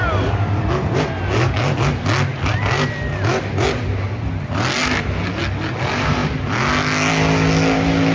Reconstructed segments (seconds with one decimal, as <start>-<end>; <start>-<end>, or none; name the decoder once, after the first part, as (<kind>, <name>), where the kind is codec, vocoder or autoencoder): none

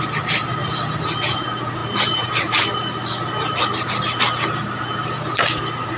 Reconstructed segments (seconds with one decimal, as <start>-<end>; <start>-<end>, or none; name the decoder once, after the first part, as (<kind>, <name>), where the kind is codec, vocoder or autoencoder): none